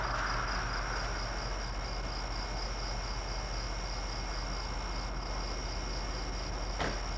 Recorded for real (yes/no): yes